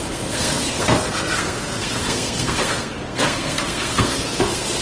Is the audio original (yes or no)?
no